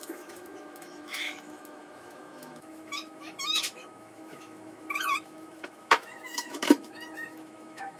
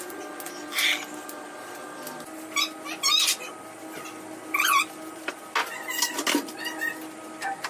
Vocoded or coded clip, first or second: first